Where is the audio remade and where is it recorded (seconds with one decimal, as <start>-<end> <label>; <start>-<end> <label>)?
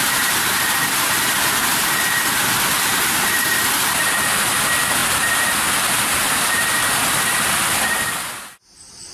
0.0-1.3 recorded; 1.3-4.0 remade; 4.0-5.0 recorded; 5.0-7.1 remade; 7.1-9.1 recorded